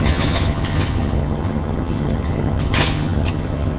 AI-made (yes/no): yes